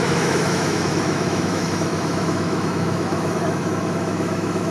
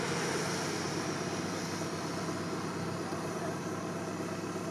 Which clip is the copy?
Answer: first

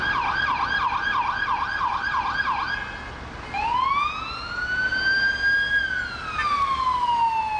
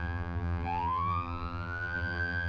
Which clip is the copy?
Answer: second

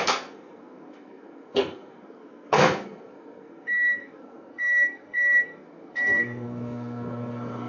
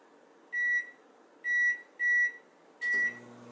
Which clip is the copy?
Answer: first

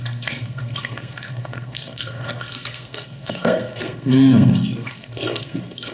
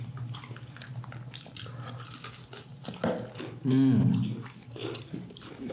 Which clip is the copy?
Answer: first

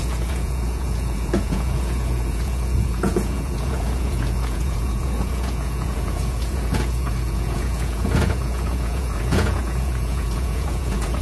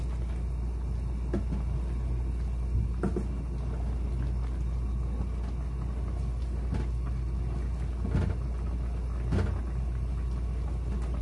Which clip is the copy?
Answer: first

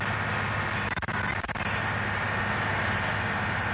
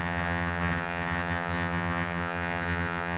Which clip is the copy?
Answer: second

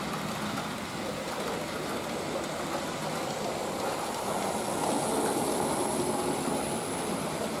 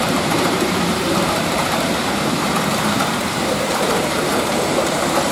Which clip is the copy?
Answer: second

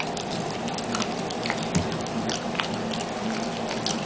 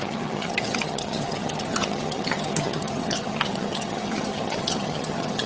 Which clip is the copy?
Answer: second